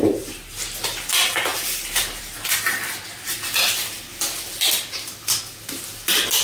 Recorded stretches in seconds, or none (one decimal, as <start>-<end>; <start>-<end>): 0.0-6.4